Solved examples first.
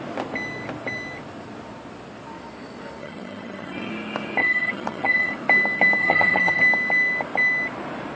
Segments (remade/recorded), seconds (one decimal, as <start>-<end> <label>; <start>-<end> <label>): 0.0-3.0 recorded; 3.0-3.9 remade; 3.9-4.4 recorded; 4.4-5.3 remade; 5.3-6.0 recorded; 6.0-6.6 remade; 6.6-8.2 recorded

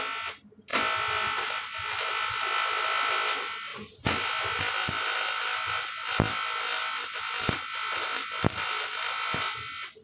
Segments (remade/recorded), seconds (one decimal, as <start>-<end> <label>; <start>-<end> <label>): 0.0-10.0 recorded

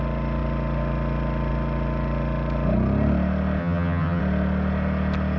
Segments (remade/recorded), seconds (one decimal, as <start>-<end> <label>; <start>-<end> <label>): 0.0-3.6 recorded; 3.6-4.2 remade; 4.2-5.4 recorded

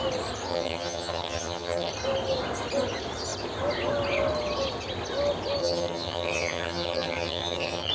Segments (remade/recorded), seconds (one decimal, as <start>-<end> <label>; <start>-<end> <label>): 0.0-0.5 recorded; 0.5-1.9 remade; 1.9-5.6 recorded; 5.6-7.9 remade

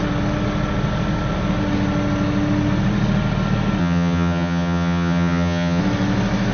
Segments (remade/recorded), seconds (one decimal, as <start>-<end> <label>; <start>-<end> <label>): 0.0-3.8 recorded; 3.8-5.8 remade; 5.8-6.5 recorded

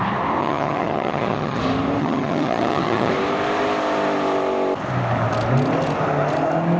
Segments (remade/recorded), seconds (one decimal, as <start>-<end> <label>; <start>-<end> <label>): 0.0-0.4 recorded; 0.4-1.6 remade; 1.6-2.0 recorded; 2.0-3.1 remade; 3.1-6.8 recorded